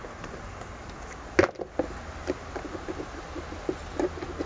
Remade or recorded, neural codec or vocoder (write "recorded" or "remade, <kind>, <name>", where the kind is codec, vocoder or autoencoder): recorded